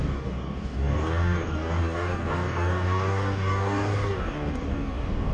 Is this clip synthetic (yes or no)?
yes